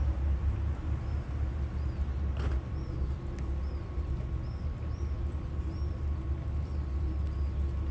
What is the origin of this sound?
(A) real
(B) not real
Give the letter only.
A